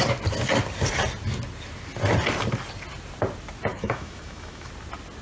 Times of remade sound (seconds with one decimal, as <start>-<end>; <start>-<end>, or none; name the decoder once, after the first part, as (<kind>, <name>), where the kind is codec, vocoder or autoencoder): 3.7-4.7 (autoencoder, DAC-VAE)